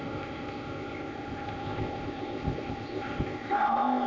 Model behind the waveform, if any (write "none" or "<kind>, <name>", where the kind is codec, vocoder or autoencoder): codec, ZipCodec